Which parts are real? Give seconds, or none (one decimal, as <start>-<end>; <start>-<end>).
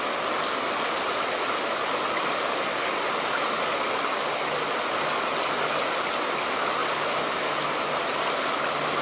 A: 0.0-9.0